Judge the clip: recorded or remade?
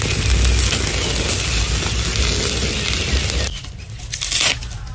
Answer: recorded